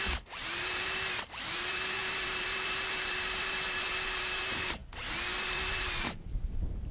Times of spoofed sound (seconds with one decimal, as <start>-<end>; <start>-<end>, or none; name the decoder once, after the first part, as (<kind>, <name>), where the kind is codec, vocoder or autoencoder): 0.0-4.8 (vocoder, BigVGAN v2); 5.3-6.9